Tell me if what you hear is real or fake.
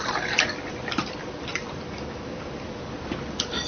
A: real